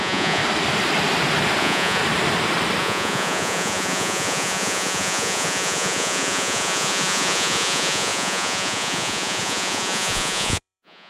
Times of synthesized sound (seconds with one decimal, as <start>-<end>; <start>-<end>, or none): 0.0-0.4; 1.6-2.0; 2.8-11.1